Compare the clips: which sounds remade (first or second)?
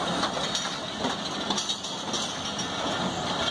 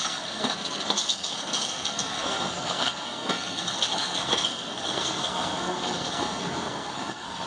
second